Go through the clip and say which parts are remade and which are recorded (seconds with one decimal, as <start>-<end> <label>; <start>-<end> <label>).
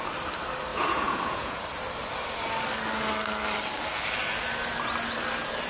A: 0.0-0.7 recorded; 0.7-1.6 remade; 1.6-5.7 recorded